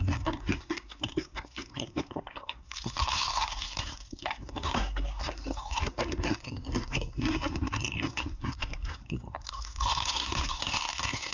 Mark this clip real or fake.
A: fake